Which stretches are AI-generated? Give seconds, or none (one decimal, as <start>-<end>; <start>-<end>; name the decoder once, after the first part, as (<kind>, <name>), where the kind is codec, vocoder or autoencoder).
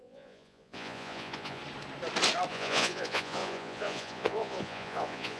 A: 0.0-1.6 (vocoder, Vocos); 2.5-5.4